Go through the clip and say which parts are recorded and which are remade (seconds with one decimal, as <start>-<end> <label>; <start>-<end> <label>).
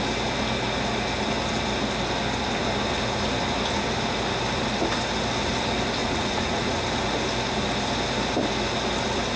0.0-6.0 recorded; 6.0-6.8 remade; 6.8-9.4 recorded